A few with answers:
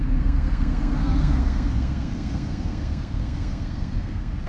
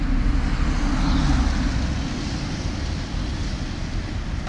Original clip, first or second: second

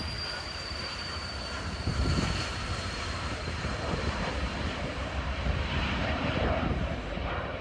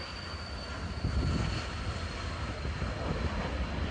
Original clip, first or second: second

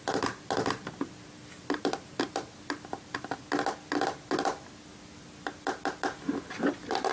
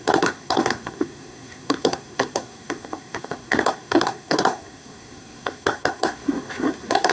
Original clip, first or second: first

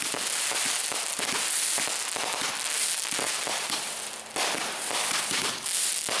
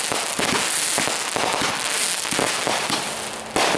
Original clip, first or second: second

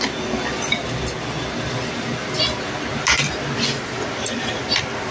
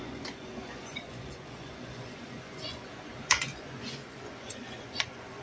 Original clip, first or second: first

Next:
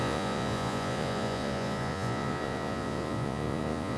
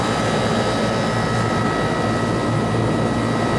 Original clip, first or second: second